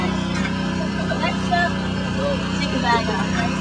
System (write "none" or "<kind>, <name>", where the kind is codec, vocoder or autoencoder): vocoder, BigVGAN v2